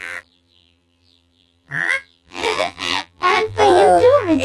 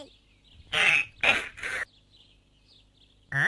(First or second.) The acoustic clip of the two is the second